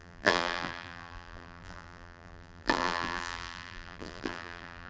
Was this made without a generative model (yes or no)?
no